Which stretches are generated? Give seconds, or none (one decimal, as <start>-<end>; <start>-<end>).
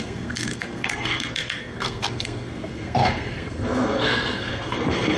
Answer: 0.0-5.2